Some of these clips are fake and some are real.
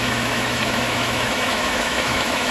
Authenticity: fake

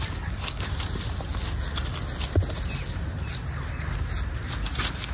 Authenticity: real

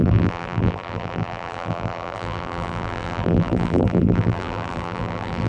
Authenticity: fake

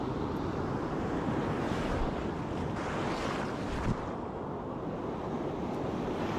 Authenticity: real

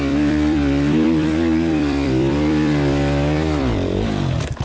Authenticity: fake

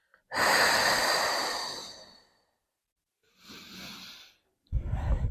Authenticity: real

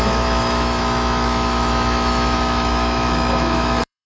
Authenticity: fake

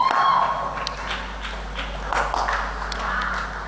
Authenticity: real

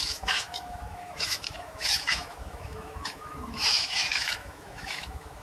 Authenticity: fake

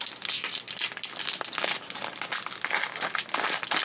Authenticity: real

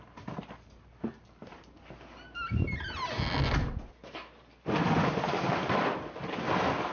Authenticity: real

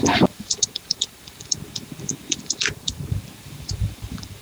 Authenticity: fake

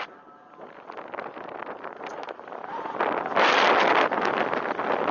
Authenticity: real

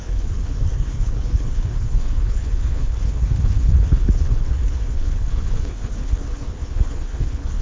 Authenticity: fake